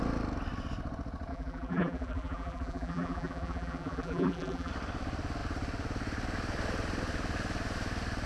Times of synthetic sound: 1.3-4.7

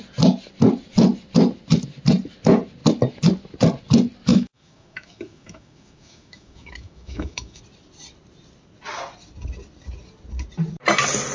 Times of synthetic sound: 4.3-7.6

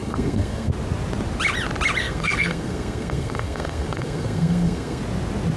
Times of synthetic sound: 0.0-0.7; 2.0-5.0

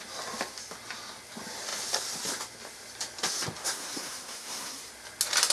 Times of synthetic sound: 3.6-4.9

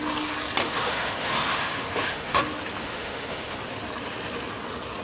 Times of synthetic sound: 0.6-2.4; 2.8-3.6

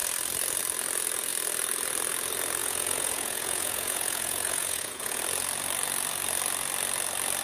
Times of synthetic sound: 2.6-5.2

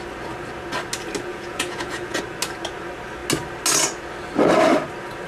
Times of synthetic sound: 1.3-2.2